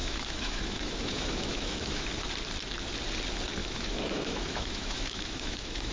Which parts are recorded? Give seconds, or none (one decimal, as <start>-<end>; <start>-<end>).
2.1-3.6